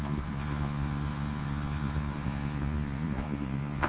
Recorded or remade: remade